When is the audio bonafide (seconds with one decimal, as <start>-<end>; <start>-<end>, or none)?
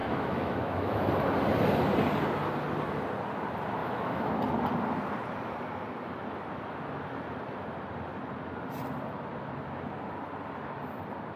1.1-3.8; 4.3-11.4